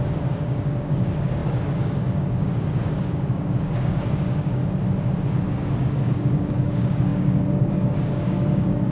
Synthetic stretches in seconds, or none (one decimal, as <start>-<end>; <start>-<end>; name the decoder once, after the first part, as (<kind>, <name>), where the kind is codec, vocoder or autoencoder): 0.0-4.6 (codec, DAC); 5.5-8.9